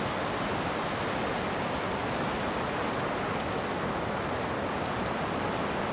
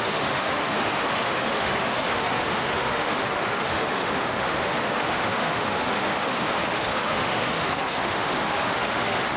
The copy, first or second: second